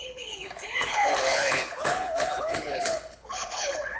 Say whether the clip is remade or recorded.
remade